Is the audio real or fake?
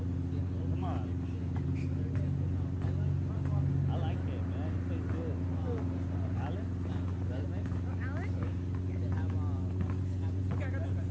real